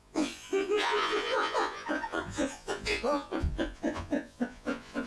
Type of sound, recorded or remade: remade